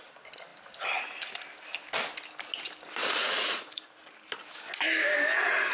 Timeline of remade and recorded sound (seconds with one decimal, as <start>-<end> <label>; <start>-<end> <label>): 0.0-3.0 recorded; 3.0-3.8 remade; 3.8-5.7 recorded